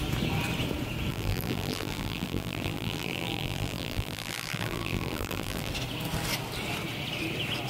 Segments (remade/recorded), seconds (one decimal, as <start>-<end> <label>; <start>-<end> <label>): 0.0-1.1 recorded; 1.1-5.7 remade; 5.7-7.7 recorded